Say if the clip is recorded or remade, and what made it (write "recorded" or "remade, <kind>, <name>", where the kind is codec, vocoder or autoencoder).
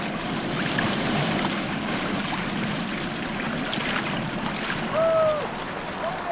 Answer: recorded